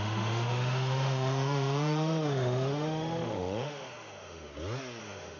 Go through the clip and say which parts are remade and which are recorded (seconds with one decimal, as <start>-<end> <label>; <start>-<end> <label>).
0.0-4.5 remade; 4.5-5.0 recorded; 5.0-5.4 remade